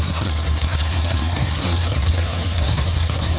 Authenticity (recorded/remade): remade